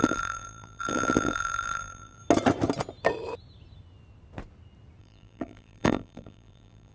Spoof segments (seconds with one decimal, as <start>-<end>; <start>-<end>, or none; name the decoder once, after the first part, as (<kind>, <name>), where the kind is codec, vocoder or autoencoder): 0.0-2.2 (vocoder, BigVGAN v2); 5.0-6.9